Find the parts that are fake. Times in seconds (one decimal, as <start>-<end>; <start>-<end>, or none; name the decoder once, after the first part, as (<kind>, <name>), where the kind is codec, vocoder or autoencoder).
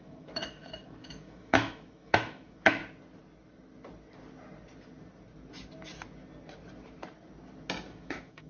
0.0-2.8 (autoencoder, DAC-VAE); 7.9-8.5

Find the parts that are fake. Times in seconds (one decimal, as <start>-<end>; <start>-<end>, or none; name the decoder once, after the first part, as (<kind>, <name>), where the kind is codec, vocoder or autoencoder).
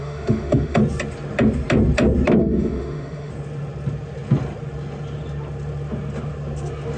0.0-0.8 (autoencoder, DAC-VAE); 2.4-3.3